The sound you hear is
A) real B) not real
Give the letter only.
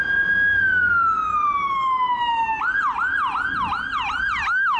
A